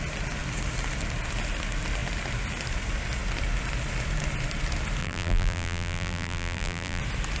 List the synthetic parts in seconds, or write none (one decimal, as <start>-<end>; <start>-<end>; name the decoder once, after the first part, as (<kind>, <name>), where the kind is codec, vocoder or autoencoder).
5.0-7.0 (vocoder, BigVGAN v2)